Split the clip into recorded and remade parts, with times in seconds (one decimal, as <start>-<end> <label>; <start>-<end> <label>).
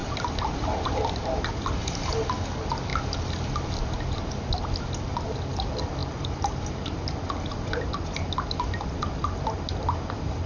0.0-1.4 remade; 1.4-10.5 recorded